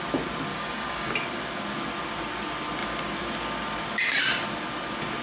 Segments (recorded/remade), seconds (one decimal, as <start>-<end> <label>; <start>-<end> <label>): 0.0-0.5 recorded; 0.5-1.1 remade; 1.1-5.2 recorded

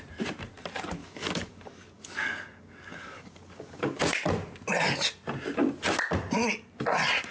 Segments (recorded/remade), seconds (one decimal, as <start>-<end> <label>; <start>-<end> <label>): 0.0-1.0 recorded; 1.0-4.0 remade; 4.0-7.3 recorded

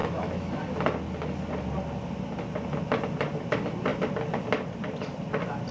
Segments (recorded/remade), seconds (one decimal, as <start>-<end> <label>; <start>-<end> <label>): 0.0-0.6 remade; 0.6-5.7 recorded

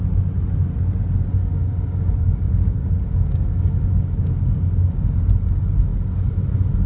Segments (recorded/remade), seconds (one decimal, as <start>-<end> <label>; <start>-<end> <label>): 0.0-1.4 recorded; 1.4-5.2 remade; 5.2-6.9 recorded

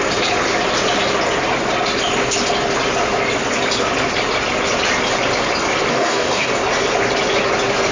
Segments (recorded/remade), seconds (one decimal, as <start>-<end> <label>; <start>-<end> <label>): 0.0-5.9 recorded; 5.9-6.5 remade; 6.5-7.9 recorded